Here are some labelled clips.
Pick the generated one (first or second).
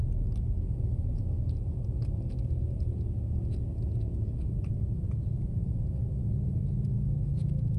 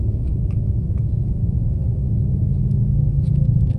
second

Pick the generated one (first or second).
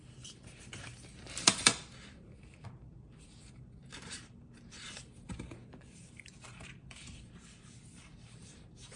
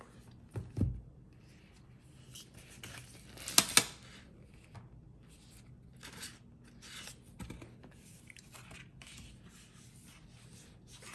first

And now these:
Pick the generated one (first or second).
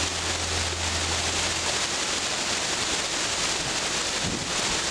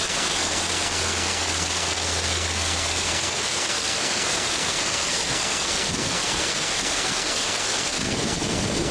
second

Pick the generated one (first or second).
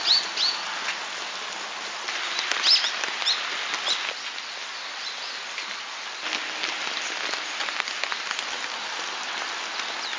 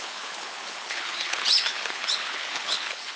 second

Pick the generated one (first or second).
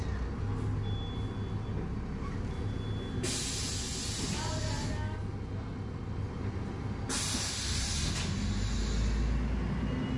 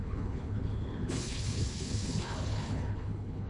second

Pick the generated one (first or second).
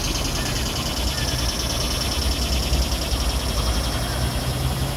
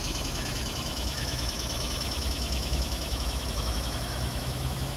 second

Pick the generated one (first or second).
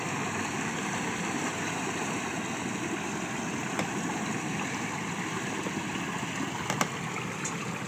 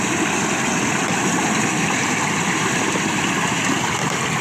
second